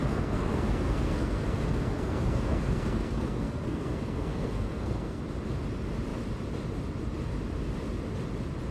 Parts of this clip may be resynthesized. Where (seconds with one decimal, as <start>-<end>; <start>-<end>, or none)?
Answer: 0.0-5.2